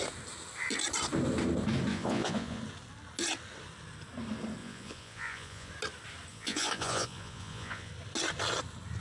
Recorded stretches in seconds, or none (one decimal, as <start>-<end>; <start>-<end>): 0.0-1.9; 2.6-4.6; 5.7-6.3; 7.9-9.0